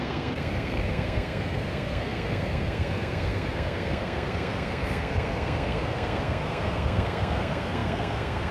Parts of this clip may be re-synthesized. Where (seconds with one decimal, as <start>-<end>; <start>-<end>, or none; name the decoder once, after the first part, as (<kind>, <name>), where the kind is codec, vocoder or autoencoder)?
0.0-8.5 (codec, SNAC)